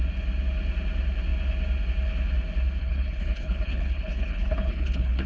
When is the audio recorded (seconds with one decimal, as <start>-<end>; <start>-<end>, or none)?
0.0-2.8

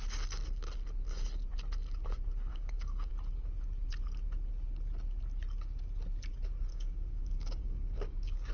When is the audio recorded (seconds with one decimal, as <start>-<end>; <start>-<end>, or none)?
0.0-2.5; 3.1-6.7

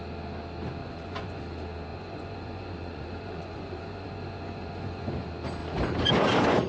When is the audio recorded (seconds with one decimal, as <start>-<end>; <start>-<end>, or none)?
0.0-0.8; 1.4-1.9; 5.1-6.7

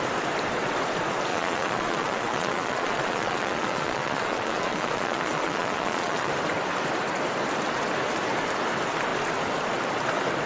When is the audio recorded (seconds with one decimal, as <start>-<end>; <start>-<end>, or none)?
0.0-1.3; 6.3-10.5

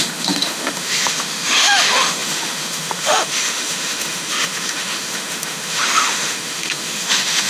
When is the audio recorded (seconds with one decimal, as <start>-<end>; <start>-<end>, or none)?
none

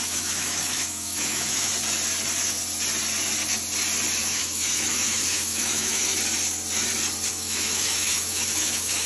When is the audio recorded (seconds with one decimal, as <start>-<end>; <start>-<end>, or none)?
1.7-4.2; 6.1-7.3

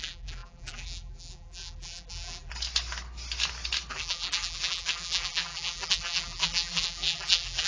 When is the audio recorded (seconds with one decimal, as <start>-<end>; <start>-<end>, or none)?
2.5-3.9